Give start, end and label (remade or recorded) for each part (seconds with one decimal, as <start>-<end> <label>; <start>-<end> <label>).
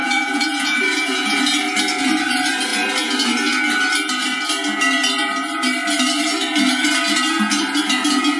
0.0-1.4 remade; 1.4-8.4 recorded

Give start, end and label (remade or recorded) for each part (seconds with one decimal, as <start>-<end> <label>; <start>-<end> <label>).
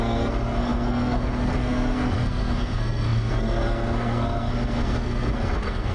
0.0-5.9 remade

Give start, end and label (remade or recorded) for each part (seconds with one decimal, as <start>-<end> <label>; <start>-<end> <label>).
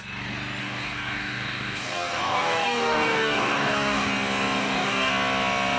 0.0-0.6 recorded; 0.6-4.1 remade; 4.1-4.6 recorded; 4.6-5.1 remade; 5.1-5.8 recorded